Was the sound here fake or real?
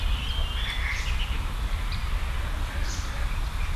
real